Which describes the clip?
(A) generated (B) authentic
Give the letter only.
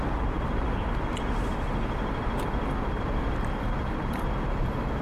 B